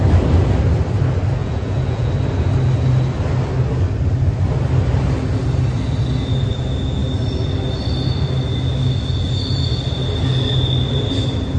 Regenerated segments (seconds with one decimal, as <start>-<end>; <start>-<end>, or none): 1.4-2.1